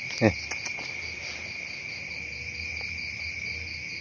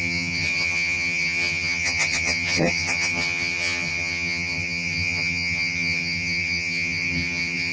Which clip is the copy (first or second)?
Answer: second